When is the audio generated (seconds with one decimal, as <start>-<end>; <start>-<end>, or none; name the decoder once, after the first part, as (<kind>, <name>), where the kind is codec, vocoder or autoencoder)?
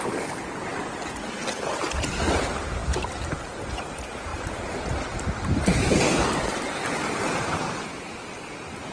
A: 0.7-1.9 (vocoder, BigVGAN v2); 2.8-3.8; 4.3-8.5